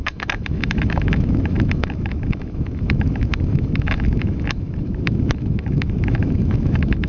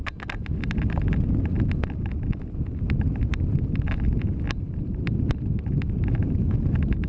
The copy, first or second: first